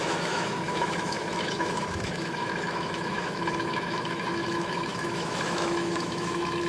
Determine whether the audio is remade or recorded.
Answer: remade